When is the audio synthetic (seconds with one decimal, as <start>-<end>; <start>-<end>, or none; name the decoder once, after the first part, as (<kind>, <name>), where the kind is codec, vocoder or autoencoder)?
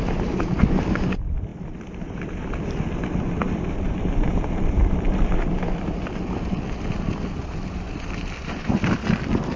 0.0-9.6 (vocoder, BigVGAN v2)